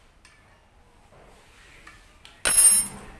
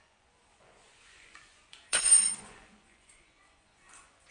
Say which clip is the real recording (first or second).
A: first